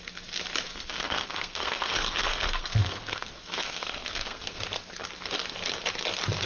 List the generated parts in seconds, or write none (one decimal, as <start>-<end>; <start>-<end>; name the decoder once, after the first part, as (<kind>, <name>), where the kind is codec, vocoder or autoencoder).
0.7-4.6 (codec, SNAC)